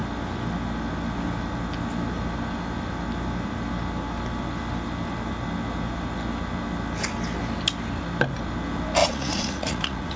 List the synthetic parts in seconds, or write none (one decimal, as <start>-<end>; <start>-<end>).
9.0-10.2